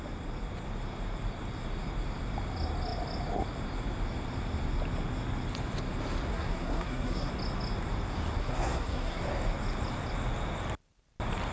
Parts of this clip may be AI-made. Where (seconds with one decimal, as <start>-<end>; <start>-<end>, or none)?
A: 6.3-7.3; 8.4-9.2